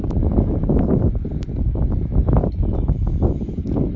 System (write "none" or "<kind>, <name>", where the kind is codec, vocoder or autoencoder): none